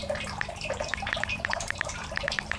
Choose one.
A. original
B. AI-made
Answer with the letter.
B